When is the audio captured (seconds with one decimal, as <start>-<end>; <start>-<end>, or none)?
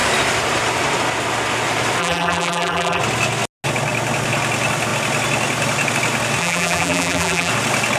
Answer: 0.0-2.0; 3.0-6.4; 7.5-8.0